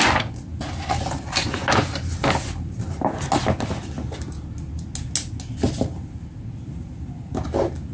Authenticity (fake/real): real